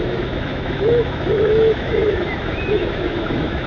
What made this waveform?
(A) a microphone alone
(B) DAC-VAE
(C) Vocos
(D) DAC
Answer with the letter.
B